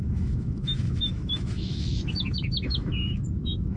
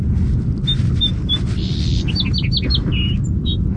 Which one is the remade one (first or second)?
first